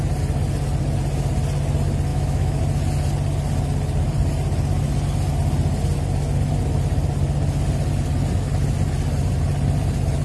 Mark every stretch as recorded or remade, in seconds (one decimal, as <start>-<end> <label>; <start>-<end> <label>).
0.0-2.1 recorded; 2.1-2.6 remade; 2.6-10.2 recorded